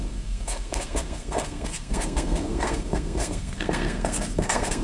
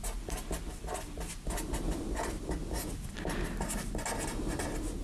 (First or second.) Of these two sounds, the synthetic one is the first